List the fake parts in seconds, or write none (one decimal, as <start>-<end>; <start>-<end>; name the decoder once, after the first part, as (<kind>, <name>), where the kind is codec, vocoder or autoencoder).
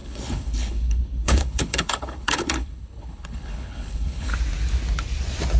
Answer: 0.0-4.3 (codec, HILCodec)